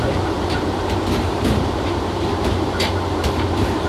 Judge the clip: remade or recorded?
remade